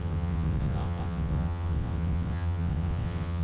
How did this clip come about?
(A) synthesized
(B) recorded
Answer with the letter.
A